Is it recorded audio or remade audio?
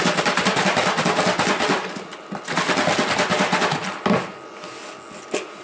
recorded